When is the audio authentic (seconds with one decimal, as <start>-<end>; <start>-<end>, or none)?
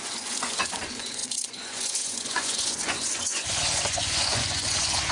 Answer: none